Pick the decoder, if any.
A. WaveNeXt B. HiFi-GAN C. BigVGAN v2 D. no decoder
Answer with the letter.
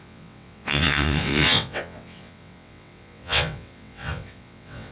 A